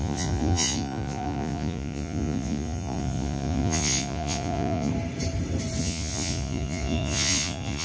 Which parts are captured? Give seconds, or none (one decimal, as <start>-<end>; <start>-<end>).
4.9-5.8

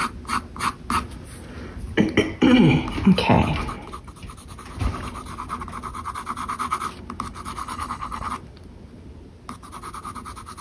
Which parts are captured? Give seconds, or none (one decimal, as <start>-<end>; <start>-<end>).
0.0-7.6; 8.3-10.6

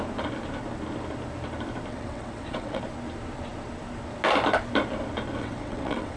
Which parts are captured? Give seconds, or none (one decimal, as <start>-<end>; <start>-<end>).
0.0-1.9; 2.8-5.4

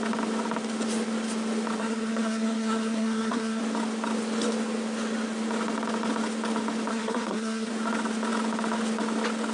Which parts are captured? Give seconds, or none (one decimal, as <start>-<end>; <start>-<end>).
0.0-1.8; 3.6-6.9; 7.7-9.5